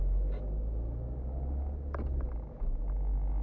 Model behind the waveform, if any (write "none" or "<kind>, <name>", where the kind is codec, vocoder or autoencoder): none